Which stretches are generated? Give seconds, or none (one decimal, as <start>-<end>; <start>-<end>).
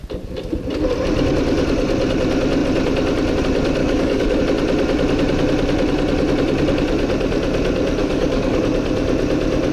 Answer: 3.8-4.4; 8.0-8.6